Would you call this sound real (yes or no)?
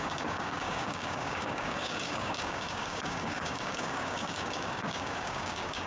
no